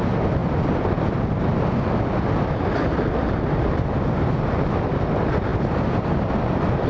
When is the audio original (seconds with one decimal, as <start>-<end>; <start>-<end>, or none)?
0.0-6.9